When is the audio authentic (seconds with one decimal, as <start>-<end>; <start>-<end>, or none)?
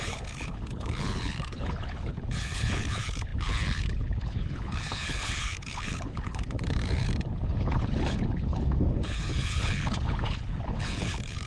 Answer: none